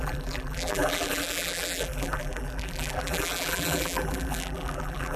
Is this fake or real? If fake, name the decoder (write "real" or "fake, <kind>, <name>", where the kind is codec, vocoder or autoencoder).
fake, vocoder, BigVGAN v2